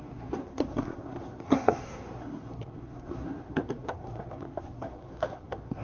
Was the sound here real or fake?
fake